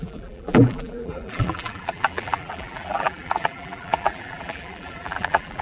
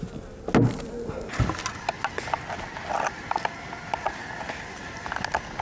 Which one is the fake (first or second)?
first